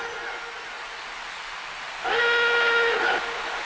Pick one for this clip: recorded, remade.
recorded